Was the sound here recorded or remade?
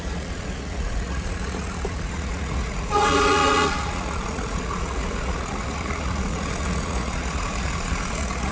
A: remade